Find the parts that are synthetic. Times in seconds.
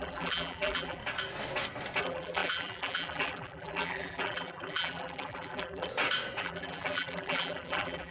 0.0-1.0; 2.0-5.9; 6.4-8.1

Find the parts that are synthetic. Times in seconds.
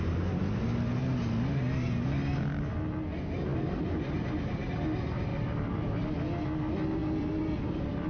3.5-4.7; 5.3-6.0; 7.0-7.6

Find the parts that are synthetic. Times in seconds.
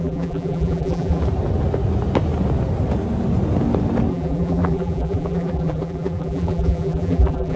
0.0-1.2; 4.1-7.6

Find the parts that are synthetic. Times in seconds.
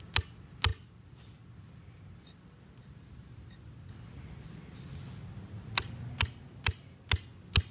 0.7-3.9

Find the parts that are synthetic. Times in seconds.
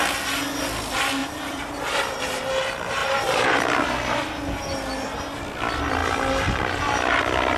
1.2-2.5; 3.0-3.8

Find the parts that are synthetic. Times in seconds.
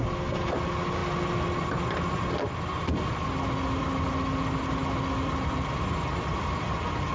none